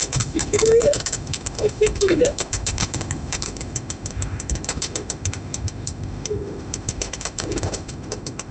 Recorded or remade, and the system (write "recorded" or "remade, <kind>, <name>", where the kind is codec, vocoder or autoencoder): remade, autoencoder, DAC-VAE